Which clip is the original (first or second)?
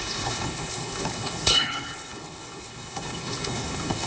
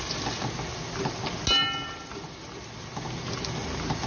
second